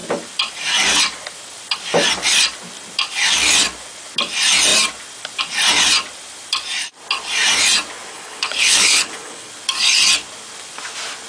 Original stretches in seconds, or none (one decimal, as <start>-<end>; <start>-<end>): 0.0-8.1; 9.5-11.3